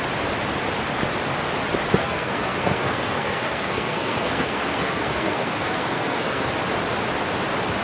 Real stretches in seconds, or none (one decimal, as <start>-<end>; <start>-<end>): 0.0-2.0; 6.5-7.8